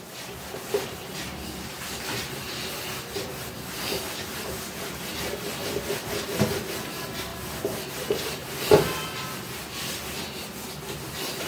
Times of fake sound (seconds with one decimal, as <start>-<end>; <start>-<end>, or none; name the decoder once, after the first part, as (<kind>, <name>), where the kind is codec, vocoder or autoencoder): none